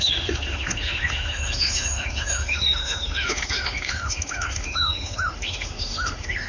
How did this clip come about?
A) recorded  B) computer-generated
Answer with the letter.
B